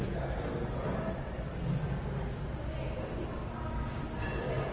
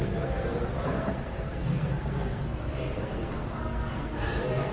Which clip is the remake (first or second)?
second